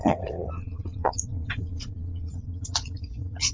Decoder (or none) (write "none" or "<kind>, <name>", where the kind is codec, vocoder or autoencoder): vocoder, Vocos